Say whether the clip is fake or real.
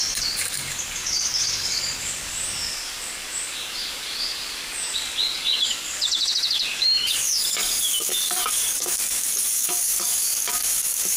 fake